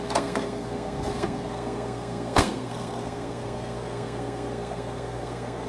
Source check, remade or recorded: remade